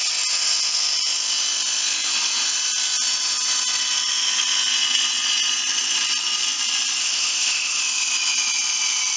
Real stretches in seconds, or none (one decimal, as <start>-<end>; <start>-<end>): 0.0-7.0; 7.8-9.2

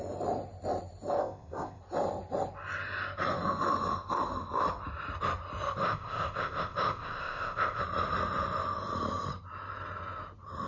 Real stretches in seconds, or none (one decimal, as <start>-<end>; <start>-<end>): 0.0-1.2; 1.8-5.8; 7.8-10.7

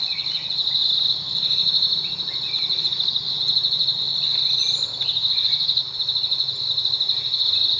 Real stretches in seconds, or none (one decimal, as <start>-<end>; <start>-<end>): 0.0-7.8

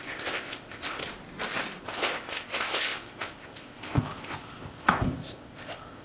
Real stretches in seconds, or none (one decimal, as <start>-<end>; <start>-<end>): 1.0-1.8

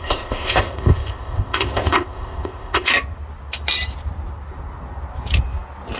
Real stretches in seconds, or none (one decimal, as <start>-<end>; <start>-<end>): 2.9-6.0

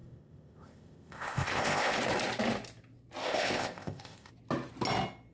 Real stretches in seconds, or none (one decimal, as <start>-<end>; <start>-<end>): 2.0-3.2; 4.3-5.3